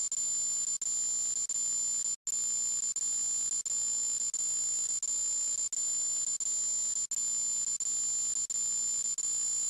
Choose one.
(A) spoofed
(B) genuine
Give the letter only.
B